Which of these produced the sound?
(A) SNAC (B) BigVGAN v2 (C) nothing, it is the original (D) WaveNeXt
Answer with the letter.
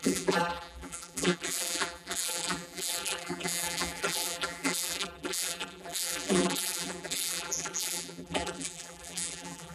B